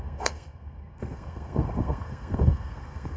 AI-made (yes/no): yes